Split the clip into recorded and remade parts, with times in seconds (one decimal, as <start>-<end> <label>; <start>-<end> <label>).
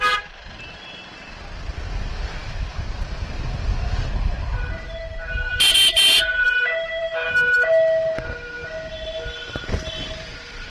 0.0-10.7 recorded